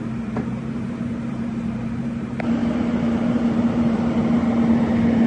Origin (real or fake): fake